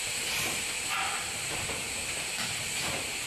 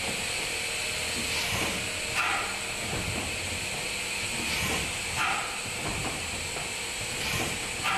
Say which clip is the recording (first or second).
second